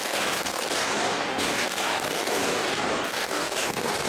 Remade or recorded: remade